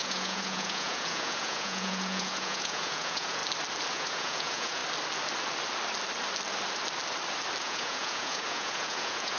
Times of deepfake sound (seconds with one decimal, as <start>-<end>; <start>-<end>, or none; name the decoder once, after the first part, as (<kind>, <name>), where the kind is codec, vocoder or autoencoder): 0.0-3.4 (vocoder, Vocos); 3.9-4.8; 7.6-9.4